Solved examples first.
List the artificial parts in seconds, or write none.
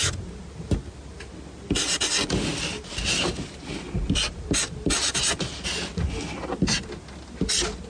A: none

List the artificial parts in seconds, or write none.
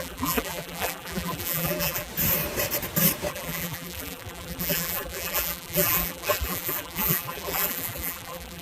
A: 0.0-2.1 (vocoder, BigVGAN v2); 3.3-8.6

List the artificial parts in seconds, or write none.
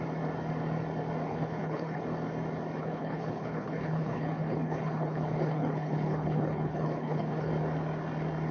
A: 1.3-2.0 (codec, HILCodec); 2.8-7.5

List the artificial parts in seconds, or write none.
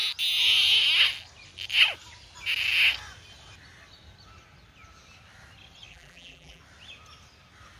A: 5.9-6.6 (vocoder, BigVGAN v2)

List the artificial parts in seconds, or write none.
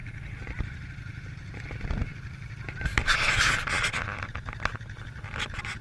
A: 0.0-1.3 (vocoder, BigVGAN v2)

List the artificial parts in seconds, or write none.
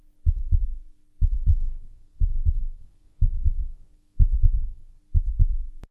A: 1.5-5.0 (codec, SNAC)